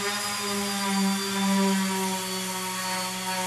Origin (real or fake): real